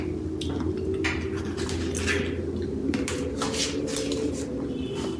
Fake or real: real